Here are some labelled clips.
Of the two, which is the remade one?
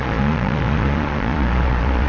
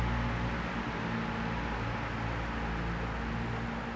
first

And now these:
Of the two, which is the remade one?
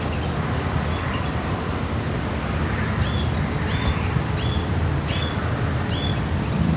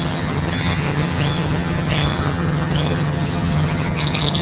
second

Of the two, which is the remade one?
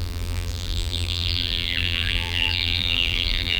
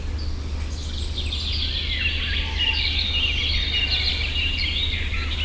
first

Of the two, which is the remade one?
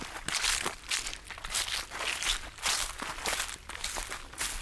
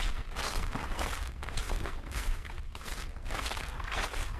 second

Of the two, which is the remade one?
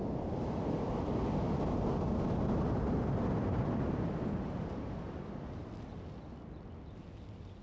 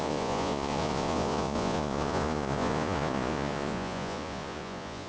second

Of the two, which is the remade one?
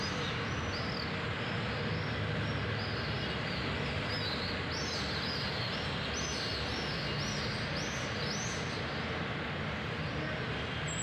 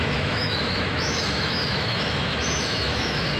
second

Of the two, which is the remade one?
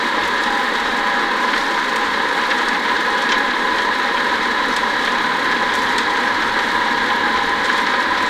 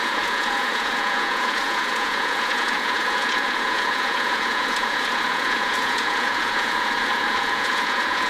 second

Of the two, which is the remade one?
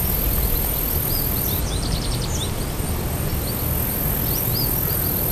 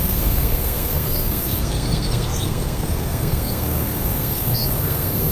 second